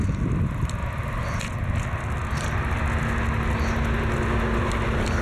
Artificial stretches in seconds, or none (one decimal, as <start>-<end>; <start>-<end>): none